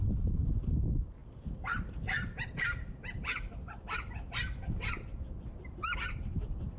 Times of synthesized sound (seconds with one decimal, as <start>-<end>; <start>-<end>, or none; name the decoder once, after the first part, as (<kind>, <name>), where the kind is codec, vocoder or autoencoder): none